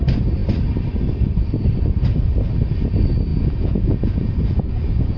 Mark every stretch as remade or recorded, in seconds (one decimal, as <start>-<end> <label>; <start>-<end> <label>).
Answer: 0.0-3.3 recorded; 3.3-5.2 remade